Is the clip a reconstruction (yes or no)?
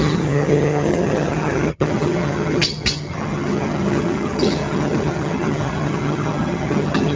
yes